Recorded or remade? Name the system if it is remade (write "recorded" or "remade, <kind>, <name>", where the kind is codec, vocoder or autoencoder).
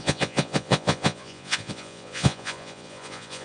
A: remade, vocoder, Vocos